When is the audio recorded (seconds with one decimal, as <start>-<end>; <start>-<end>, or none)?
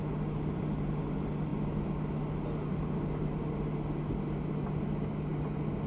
0.0-5.9